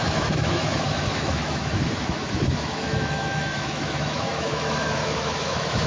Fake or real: fake